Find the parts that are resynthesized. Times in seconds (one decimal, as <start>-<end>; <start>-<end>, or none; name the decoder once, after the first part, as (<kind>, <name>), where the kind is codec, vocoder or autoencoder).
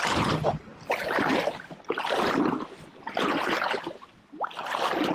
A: none